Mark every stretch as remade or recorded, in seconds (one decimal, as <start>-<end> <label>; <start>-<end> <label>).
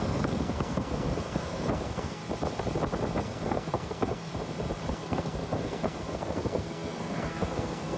0.0-2.2 remade; 2.2-3.2 recorded; 3.2-4.3 remade; 4.3-4.9 recorded; 4.9-8.0 remade